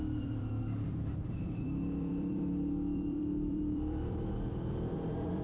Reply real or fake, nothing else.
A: fake